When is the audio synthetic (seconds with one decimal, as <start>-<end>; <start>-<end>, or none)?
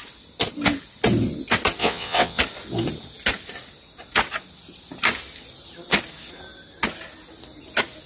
1.8-2.4